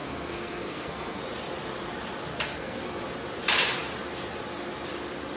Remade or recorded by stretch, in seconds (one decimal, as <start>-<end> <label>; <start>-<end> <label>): 0.0-1.2 remade; 1.2-2.3 recorded; 2.3-3.0 remade; 3.0-5.4 recorded